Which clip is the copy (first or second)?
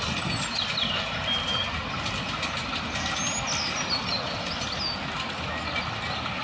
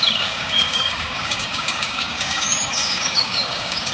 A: second